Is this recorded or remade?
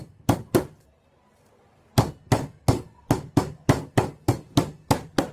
recorded